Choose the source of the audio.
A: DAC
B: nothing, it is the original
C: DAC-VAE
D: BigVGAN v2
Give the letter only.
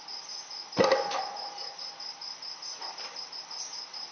B